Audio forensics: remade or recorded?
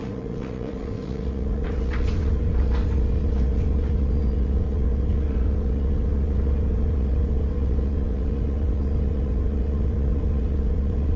remade